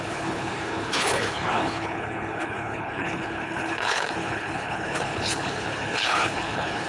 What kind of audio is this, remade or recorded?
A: remade